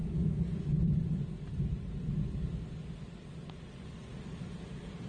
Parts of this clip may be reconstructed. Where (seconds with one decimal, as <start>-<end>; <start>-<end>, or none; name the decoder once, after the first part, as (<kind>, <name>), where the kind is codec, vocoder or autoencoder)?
none